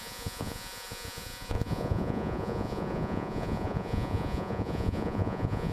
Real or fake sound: fake